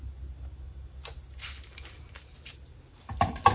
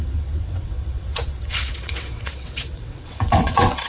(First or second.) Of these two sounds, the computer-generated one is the second